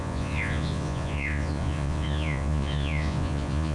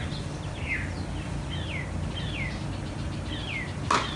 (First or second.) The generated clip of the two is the first